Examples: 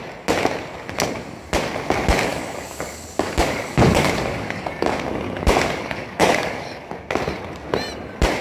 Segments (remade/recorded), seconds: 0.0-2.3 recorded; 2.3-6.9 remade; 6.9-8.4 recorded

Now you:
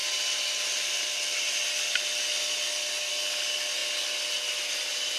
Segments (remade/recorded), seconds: 0.0-5.2 recorded

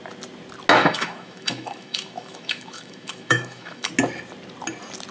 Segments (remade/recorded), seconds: 0.0-0.8 recorded; 0.8-3.9 remade; 3.9-5.1 recorded

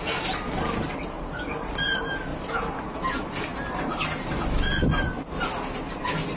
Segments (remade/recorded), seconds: 0.0-6.4 recorded

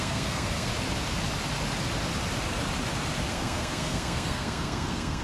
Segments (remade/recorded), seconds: 0.0-0.7 remade; 0.7-3.3 recorded; 3.3-5.2 remade